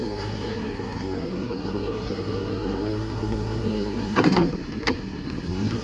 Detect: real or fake fake